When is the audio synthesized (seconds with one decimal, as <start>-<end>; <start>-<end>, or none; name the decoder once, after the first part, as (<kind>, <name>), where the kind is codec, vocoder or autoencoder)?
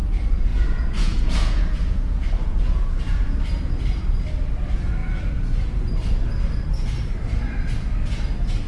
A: 0.5-3.4 (vocoder, Vocos)